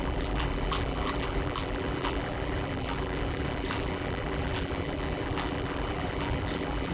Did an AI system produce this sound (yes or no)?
yes